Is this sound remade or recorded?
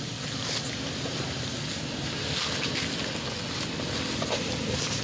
recorded